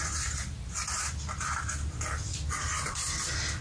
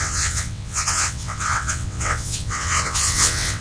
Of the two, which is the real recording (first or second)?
first